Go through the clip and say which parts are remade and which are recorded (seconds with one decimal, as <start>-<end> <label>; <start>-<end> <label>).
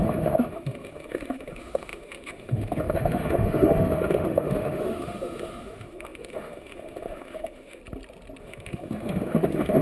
0.0-7.8 remade; 7.8-8.4 recorded; 8.4-9.8 remade